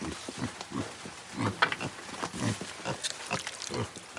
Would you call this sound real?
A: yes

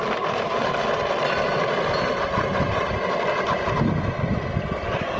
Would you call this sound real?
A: yes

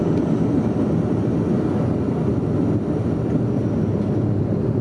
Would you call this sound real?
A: yes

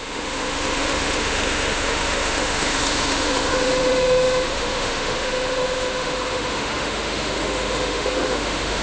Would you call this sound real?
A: no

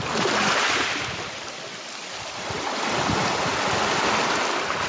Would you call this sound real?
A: yes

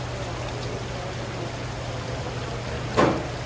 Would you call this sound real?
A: yes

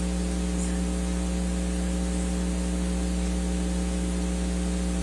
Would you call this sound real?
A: yes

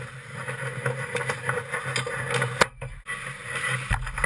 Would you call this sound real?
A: yes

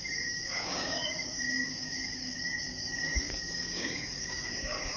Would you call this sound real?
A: no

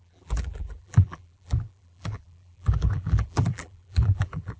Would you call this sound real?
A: no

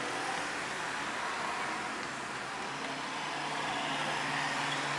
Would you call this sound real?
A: yes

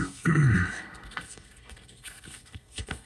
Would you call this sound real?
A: no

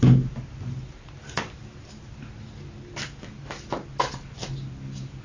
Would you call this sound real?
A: yes